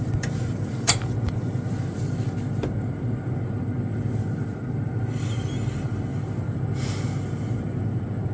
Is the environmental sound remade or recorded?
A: remade